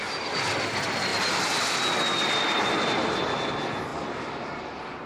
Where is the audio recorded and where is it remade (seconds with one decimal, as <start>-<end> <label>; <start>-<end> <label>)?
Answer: 0.0-1.1 recorded; 1.1-2.7 remade; 2.7-3.9 recorded; 3.9-4.6 remade; 4.6-5.1 recorded